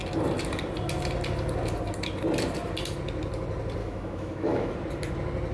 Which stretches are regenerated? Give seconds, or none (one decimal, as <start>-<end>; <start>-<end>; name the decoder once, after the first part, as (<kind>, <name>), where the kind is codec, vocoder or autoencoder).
3.8-4.7 (autoencoder, DAC-VAE)